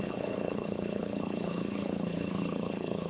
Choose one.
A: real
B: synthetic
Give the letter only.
B